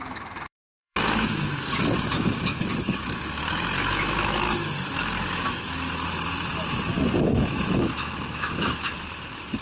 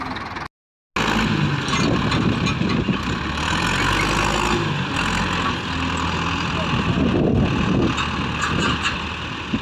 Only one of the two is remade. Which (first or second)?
first